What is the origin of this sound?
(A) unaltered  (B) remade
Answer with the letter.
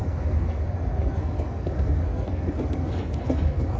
B